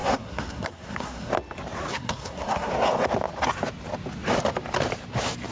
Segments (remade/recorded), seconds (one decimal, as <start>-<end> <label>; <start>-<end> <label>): 0.0-1.3 remade; 1.3-1.9 recorded; 1.9-2.7 remade; 2.7-5.5 recorded